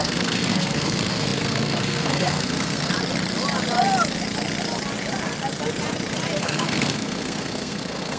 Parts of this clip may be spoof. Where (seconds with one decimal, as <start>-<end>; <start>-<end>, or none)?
0.0-2.9; 6.4-8.2

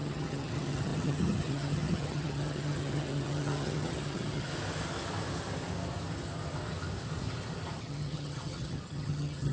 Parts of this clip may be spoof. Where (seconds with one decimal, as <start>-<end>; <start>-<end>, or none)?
0.0-4.5; 7.8-9.5

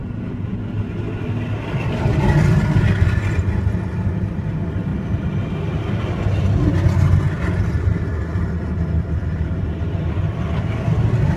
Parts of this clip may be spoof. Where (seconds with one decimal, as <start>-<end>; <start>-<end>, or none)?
0.0-0.7